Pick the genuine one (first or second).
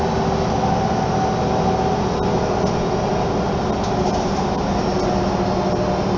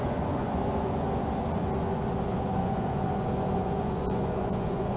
first